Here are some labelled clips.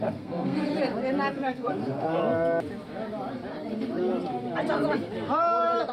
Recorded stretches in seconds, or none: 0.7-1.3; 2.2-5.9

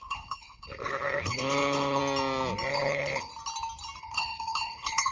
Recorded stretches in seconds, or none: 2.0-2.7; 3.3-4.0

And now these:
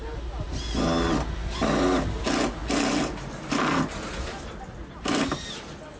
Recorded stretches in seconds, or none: 0.0-2.6; 4.1-6.0

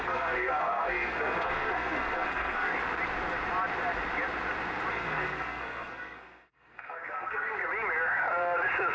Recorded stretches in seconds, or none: 2.7-4.9; 7.6-8.9

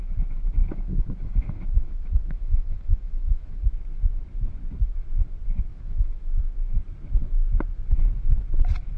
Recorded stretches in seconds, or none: 0.0-0.6; 3.6-5.7; 6.4-9.0

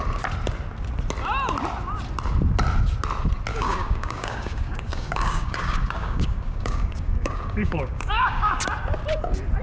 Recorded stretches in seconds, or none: 0.0-3.5; 8.6-9.6

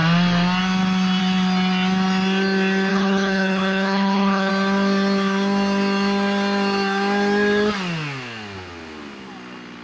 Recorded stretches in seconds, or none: 0.0-2.9; 4.5-9.8

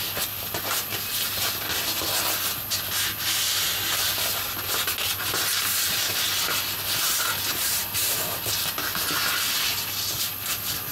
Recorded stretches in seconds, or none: 0.0-5.5; 6.1-10.9